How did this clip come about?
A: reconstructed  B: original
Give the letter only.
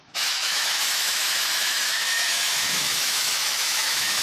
A